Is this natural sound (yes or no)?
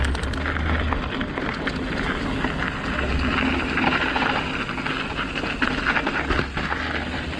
yes